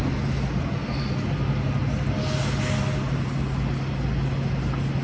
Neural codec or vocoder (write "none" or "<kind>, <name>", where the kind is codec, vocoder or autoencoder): none